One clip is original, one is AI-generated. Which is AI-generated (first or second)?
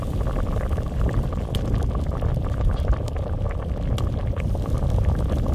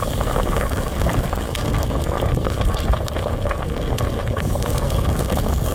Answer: second